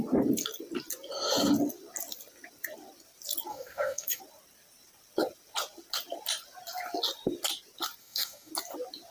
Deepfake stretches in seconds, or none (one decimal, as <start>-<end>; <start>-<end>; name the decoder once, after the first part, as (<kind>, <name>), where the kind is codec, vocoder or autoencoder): 3.5-4.2 (codec, DAC); 8.0-8.5